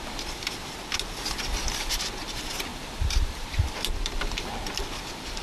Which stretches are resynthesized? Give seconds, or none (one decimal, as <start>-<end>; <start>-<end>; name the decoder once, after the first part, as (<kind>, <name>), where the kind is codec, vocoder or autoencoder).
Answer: 2.7-3.6 (vocoder, BigVGAN v2)